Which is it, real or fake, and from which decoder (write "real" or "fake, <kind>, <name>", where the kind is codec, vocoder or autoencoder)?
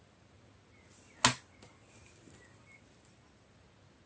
real